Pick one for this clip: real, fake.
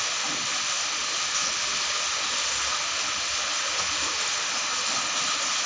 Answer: real